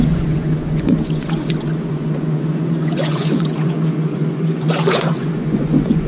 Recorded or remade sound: remade